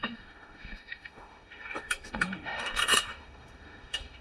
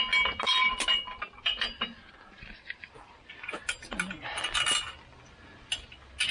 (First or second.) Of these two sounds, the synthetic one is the first